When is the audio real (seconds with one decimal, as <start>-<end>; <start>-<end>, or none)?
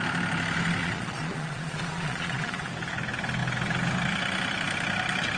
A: 0.0-0.8; 2.7-5.4